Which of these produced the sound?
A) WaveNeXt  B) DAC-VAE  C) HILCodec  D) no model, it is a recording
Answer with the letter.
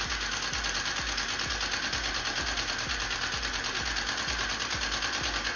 D